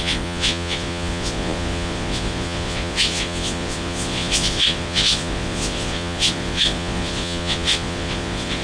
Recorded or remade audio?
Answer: remade